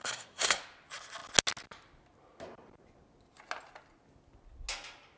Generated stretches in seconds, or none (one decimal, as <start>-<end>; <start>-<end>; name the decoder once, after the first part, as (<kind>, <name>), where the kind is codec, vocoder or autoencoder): 0.0-0.6 (codec, SNAC)